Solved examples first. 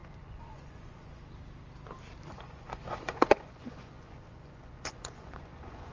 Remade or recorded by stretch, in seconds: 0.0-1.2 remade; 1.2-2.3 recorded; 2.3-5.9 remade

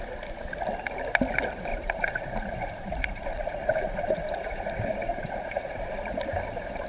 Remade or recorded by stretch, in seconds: 0.0-1.7 recorded; 1.7-5.8 remade; 5.8-6.9 recorded

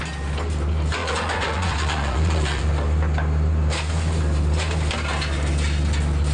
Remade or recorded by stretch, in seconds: 0.0-1.0 recorded; 1.0-2.7 remade; 2.7-6.3 recorded

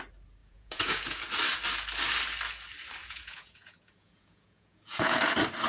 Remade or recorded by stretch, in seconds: 0.0-0.4 recorded; 0.4-1.2 remade; 1.2-3.0 recorded; 3.0-5.3 remade; 5.3-5.7 recorded

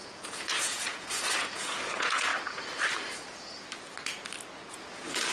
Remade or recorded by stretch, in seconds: 0.0-2.3 remade; 2.3-4.7 recorded; 4.7-5.3 remade

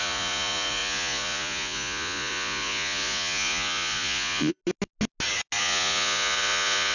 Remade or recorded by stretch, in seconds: 0.0-4.6 remade; 4.6-5.6 recorded; 5.6-6.9 remade